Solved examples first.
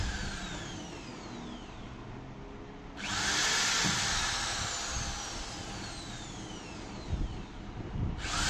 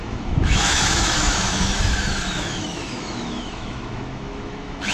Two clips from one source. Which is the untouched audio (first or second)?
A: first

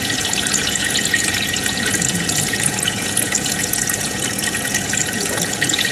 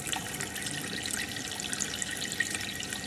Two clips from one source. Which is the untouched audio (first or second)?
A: second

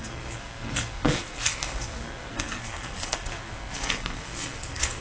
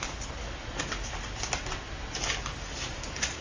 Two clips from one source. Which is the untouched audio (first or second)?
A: second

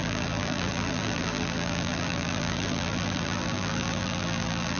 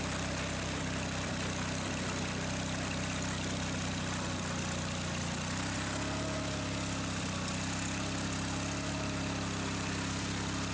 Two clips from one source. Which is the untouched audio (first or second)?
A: second